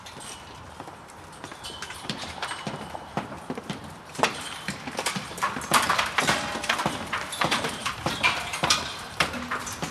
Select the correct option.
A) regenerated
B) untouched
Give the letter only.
A